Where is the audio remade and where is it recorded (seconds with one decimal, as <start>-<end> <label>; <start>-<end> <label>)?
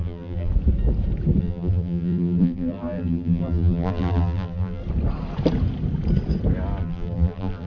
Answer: 0.0-0.5 remade; 0.5-1.4 recorded; 1.4-4.8 remade; 4.8-6.8 recorded; 6.8-7.7 remade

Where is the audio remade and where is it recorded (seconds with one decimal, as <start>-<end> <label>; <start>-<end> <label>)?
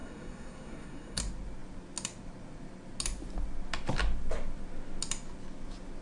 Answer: 0.0-1.2 remade; 1.2-6.0 recorded